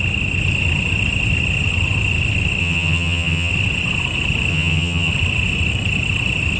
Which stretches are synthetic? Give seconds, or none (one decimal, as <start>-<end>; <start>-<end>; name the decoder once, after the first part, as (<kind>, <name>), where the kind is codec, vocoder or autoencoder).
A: 2.6-3.5 (vocoder, HiFi-GAN); 4.5-5.1